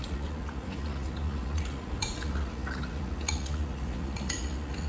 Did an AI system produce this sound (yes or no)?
yes